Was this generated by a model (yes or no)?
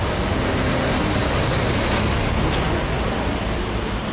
no